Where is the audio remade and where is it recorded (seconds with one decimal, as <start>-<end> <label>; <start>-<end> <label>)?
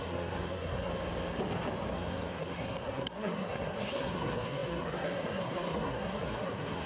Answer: 0.0-0.9 remade; 0.9-1.9 recorded; 1.9-6.9 remade